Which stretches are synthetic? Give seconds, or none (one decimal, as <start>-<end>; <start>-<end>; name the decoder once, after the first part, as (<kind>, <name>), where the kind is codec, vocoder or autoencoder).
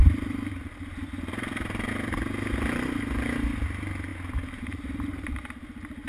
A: 0.0-1.9 (vocoder, BigVGAN v2); 4.1-5.4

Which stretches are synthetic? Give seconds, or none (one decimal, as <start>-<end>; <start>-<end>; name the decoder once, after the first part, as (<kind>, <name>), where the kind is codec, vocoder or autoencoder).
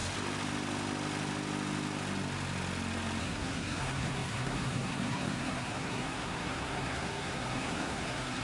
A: 3.2-8.4 (codec, SNAC)